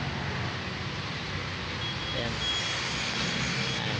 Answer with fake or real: real